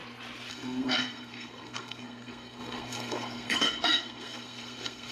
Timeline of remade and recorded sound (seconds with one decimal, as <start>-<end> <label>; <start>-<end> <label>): 0.0-0.5 recorded; 0.5-5.1 remade